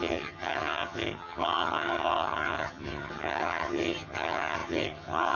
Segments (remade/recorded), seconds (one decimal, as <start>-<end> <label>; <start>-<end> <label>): 0.0-5.3 remade